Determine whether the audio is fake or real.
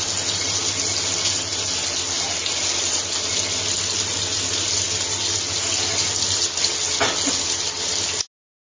real